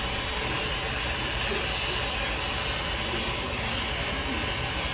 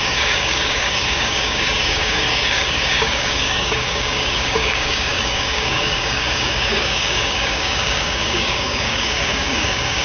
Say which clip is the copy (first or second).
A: second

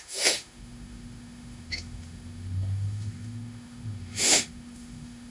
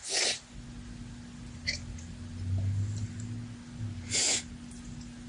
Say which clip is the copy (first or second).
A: first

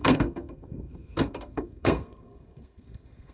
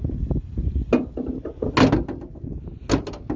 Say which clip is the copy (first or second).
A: first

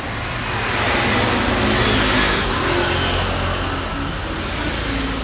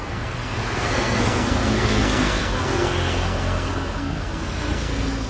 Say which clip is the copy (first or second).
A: second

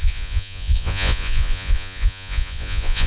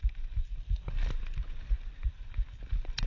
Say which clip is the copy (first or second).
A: first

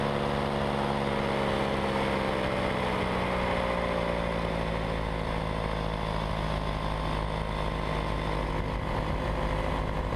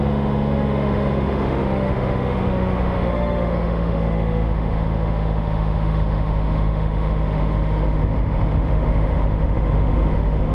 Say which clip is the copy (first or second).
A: second